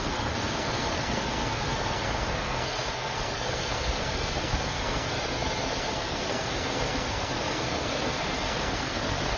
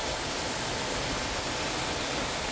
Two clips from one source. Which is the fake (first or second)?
first